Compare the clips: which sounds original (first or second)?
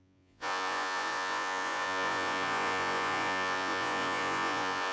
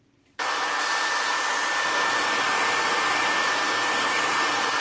second